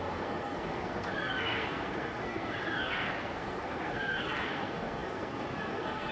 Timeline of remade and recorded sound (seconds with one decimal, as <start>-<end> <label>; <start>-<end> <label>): 0.0-6.1 remade